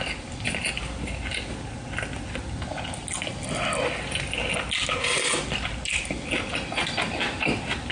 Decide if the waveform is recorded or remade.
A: recorded